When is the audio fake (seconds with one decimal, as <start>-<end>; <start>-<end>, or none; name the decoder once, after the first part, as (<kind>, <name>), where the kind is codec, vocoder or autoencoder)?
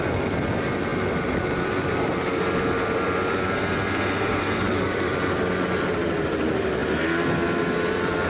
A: 0.0-6.8 (vocoder, BigVGAN v2); 7.7-8.3